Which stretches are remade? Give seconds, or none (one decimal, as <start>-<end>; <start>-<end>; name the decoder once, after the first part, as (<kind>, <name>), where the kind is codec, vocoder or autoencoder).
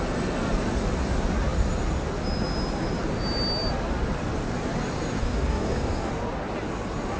5.2-6.1 (codec, DAC)